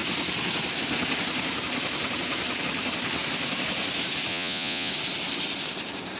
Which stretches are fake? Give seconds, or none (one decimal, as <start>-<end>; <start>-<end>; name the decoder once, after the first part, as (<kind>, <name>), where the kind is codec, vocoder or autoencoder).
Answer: 4.3-4.9 (vocoder, Vocos)